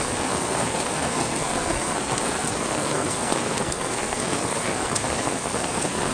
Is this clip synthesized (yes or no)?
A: yes